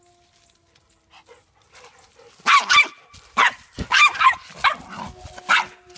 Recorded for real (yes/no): yes